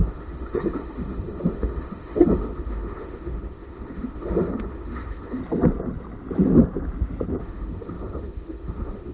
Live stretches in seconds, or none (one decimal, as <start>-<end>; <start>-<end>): 5.4-7.4